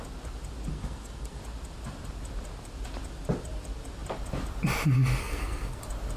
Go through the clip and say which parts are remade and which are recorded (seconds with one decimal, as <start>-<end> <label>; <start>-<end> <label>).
0.0-0.7 recorded; 0.7-1.4 remade; 1.4-5.2 recorded; 5.2-5.8 remade; 5.8-6.2 recorded

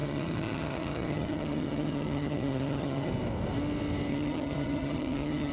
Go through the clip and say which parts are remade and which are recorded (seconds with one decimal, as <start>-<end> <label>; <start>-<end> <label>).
0.0-3.1 remade; 3.1-4.1 recorded; 4.1-5.5 remade

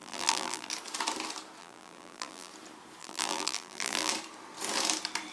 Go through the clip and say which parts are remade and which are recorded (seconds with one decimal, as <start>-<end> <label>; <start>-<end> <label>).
0.0-0.7 remade; 0.7-1.6 recorded; 1.6-2.5 remade; 2.5-3.0 recorded; 3.0-4.1 remade; 4.1-5.3 recorded

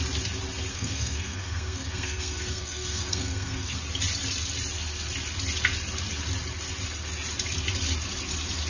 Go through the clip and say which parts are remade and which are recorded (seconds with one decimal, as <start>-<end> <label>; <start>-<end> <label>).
0.0-0.7 recorded; 0.7-3.8 remade; 3.8-8.7 recorded